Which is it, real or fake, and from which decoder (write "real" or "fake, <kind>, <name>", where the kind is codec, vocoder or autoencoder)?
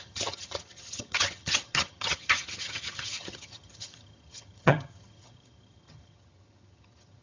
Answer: fake, vocoder, HiFi-GAN